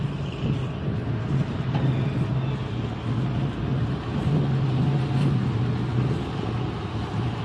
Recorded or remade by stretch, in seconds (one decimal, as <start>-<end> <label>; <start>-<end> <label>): 0.0-7.4 recorded